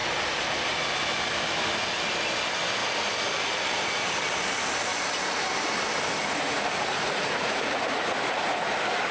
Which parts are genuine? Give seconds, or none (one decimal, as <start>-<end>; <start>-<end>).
0.0-6.2; 8.7-9.1